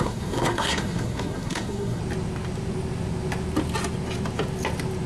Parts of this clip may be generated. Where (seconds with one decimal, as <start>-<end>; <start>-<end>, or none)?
0.0-2.0